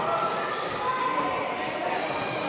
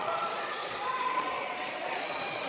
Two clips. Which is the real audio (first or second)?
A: first